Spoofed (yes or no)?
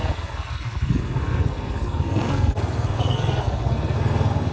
yes